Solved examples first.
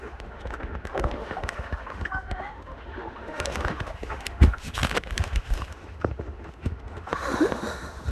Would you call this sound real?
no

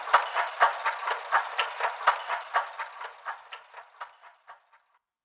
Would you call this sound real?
yes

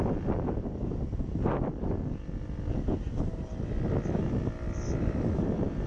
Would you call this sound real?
yes